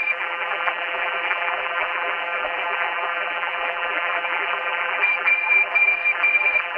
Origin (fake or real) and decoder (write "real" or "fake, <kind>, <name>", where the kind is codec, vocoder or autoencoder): fake, vocoder, BigVGAN v2